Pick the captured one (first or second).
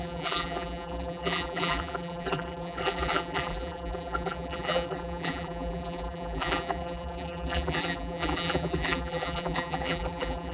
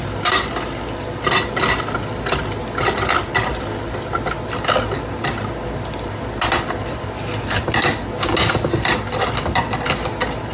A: second